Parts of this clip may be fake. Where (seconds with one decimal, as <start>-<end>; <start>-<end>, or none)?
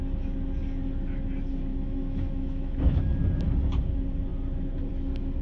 1.7-3.2